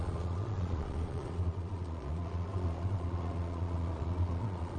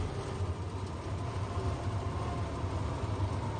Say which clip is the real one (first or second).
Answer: second